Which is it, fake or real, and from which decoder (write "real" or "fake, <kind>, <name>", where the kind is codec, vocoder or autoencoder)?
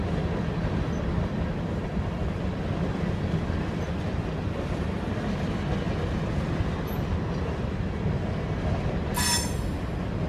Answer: real